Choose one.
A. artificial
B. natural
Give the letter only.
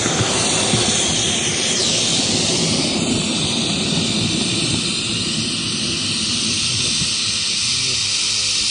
B